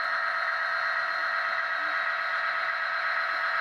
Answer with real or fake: real